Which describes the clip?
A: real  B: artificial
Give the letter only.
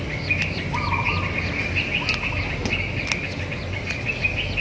A